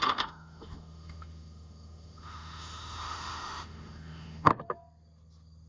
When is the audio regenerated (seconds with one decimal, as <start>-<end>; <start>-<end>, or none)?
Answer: 0.0-4.5